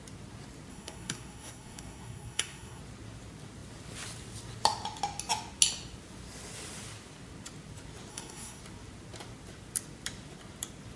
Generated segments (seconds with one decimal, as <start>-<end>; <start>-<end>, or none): 0.7-2.8; 8.1-8.6